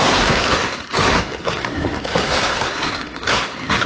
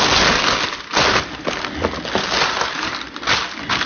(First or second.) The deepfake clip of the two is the first